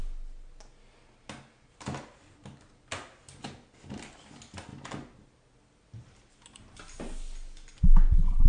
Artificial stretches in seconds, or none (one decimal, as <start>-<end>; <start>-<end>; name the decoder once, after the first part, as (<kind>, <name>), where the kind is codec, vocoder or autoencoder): none